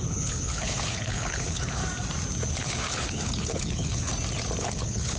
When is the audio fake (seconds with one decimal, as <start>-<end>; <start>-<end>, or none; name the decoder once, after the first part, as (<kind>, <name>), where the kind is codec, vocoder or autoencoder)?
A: 0.0-1.8 (codec, HILCodec); 2.5-4.1; 4.6-5.2

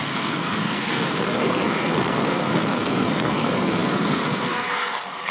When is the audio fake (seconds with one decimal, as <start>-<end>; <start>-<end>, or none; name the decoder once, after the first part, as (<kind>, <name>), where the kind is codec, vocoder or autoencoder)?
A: 0.0-5.3 (codec, SNAC)